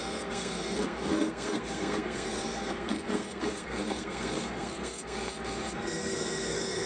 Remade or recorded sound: remade